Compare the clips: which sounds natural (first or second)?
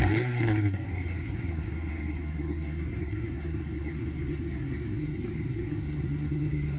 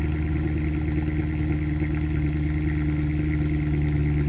second